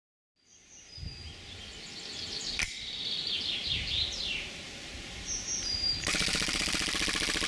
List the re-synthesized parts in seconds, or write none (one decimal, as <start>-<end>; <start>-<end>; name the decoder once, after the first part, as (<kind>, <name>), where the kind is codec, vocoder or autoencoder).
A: 3.6-6.6 (vocoder, BigVGAN v2)